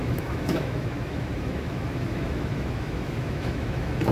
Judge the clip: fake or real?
fake